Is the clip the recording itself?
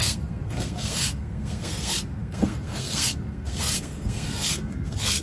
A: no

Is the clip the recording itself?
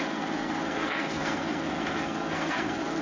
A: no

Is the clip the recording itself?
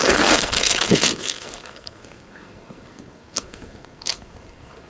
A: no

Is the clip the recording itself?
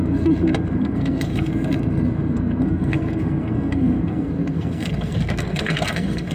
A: no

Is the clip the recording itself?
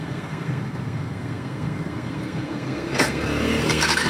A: no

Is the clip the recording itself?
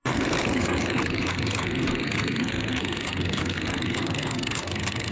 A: no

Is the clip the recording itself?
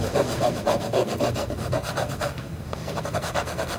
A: no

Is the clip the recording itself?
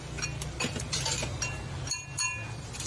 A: yes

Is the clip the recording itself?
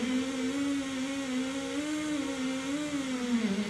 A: yes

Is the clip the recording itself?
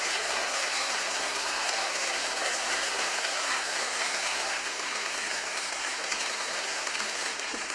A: no